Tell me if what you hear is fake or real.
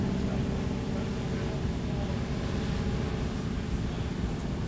real